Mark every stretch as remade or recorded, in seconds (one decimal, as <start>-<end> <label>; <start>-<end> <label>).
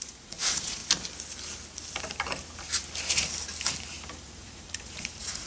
0.0-0.8 remade; 0.8-4.1 recorded; 4.1-5.5 remade